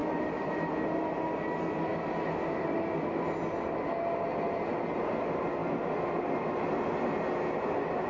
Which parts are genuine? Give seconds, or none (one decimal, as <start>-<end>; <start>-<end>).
0.7-8.1